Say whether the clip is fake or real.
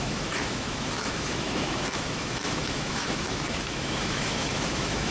fake